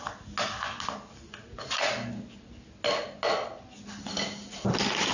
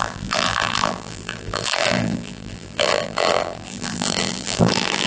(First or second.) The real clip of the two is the first